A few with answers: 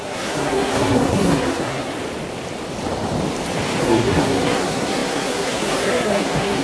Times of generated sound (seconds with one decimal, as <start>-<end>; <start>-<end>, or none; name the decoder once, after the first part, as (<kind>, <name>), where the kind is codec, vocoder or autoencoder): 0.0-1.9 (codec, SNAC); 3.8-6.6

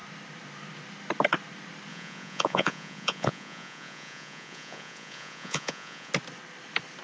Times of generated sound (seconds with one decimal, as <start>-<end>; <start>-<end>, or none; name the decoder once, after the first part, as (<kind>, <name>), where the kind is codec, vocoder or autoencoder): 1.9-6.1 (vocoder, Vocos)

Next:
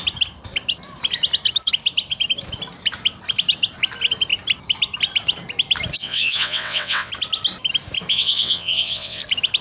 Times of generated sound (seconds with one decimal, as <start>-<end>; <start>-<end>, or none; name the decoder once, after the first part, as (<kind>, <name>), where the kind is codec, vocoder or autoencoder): 6.0-7.1 (vocoder, WaveNeXt); 8.1-9.2

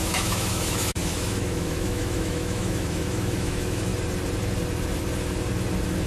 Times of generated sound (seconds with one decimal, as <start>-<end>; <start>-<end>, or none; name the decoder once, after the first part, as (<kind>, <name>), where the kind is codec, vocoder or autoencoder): 0.0-3.9 (autoencoder, DAC-VAE)

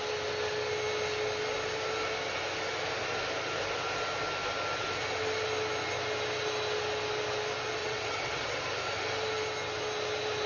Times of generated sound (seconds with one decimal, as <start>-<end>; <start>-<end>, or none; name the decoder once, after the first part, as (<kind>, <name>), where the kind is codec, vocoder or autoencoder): 7.8-8.6 (vocoder, WaveNeXt)